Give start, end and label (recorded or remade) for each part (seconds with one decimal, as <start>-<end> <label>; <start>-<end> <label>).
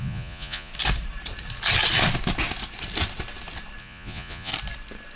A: 0.0-0.7 remade; 0.7-3.8 recorded; 3.8-4.5 remade; 4.5-5.2 recorded